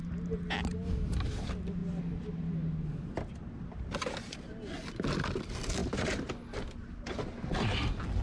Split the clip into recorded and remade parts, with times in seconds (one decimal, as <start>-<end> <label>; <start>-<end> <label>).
0.0-5.8 recorded; 5.8-6.3 remade; 6.3-8.2 recorded

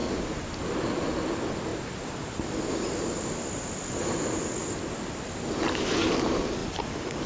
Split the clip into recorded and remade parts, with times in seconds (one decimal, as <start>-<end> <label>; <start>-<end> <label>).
0.0-6.6 recorded; 6.6-7.3 remade

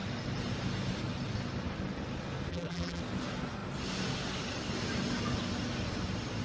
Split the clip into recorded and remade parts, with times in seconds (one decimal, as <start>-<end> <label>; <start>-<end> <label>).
0.0-2.5 recorded; 2.5-3.0 remade; 3.0-6.4 recorded

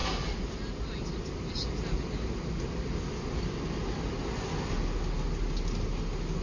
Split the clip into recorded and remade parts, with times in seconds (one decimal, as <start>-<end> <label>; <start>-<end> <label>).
0.0-6.4 recorded

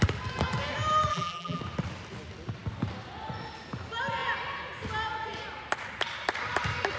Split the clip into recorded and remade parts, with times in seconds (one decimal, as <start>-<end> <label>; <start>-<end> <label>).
0.0-1.1 recorded; 1.1-1.6 remade; 1.6-7.0 recorded

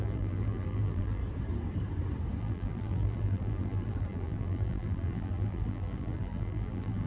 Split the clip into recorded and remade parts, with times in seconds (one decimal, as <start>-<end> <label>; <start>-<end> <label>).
0.0-1.2 remade; 1.2-2.4 recorded; 2.4-7.1 remade

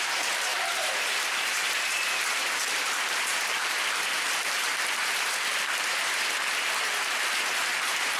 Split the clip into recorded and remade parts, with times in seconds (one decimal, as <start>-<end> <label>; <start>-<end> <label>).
0.0-8.2 remade